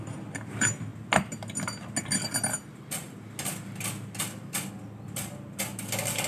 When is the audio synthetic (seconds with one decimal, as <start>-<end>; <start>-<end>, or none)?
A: none